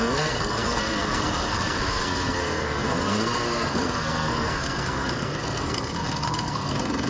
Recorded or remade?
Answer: remade